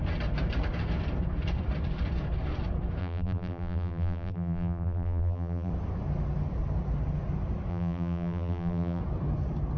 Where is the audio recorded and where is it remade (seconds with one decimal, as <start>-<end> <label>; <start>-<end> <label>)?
0.0-3.0 recorded; 3.0-5.7 remade; 5.7-7.7 recorded; 7.7-9.0 remade; 9.0-9.8 recorded